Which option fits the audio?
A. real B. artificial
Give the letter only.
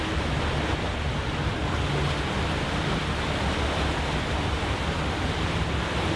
A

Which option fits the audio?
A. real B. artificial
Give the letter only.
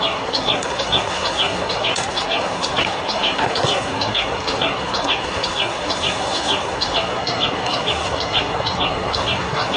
B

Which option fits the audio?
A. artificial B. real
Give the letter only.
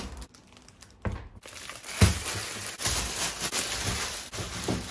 B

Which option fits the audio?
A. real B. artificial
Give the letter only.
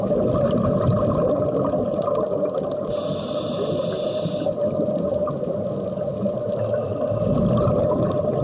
A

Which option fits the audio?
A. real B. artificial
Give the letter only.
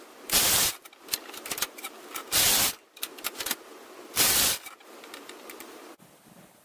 A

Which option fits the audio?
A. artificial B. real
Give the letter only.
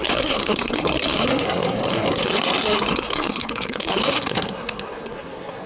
A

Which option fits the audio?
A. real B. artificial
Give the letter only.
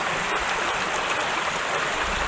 A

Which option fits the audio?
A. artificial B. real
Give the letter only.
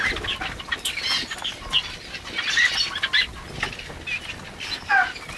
B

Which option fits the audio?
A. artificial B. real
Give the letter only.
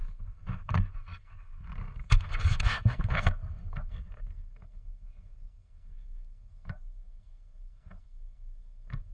A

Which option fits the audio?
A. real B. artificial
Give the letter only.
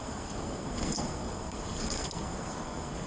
B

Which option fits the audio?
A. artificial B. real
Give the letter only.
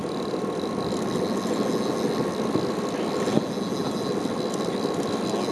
B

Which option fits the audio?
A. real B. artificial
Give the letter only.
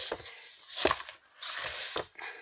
A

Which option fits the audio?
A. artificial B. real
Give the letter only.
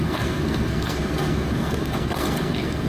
A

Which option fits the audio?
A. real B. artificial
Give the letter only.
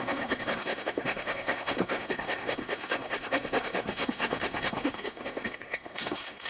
B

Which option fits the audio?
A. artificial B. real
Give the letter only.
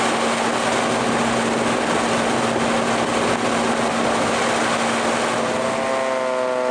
B